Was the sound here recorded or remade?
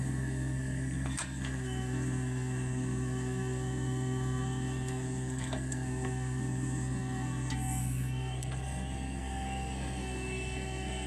remade